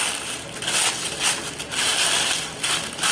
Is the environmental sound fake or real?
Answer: real